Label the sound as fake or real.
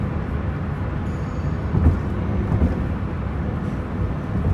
real